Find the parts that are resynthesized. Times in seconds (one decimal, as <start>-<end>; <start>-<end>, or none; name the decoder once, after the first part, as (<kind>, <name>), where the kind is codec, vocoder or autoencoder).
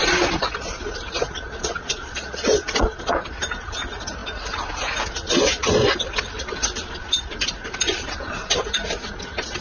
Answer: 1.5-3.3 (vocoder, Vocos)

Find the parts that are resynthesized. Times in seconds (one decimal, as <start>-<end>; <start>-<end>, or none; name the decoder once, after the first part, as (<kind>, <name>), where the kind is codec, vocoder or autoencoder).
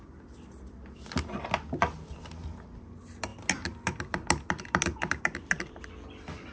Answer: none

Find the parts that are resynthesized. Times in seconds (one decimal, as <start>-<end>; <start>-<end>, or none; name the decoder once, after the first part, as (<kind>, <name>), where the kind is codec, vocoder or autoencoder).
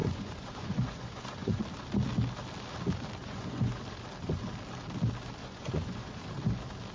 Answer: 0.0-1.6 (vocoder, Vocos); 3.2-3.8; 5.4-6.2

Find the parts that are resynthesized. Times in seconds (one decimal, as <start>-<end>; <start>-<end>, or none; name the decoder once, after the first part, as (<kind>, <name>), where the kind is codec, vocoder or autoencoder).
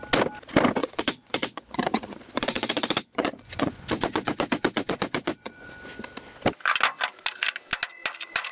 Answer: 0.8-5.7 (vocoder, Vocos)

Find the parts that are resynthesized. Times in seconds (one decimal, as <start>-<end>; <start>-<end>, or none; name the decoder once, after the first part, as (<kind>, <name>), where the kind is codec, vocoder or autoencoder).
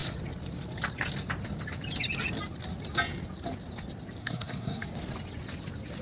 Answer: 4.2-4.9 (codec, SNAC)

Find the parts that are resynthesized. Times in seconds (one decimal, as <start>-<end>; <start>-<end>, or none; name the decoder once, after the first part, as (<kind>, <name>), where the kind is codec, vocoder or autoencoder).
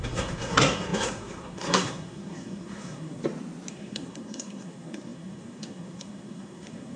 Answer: 0.0-3.2 (codec, SNAC); 3.7-7.0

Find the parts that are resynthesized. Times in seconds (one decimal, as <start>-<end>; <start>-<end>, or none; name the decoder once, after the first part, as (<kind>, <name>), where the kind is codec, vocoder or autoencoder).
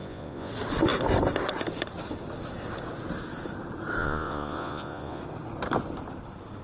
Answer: 0.0-0.5 (vocoder, Vocos); 4.0-5.2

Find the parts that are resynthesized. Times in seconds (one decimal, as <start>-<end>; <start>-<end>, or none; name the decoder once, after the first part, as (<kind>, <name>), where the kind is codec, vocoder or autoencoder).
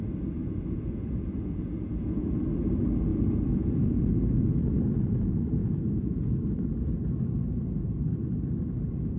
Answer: 0.4-2.3 (vocoder, Vocos); 3.1-4.0; 5.6-6.5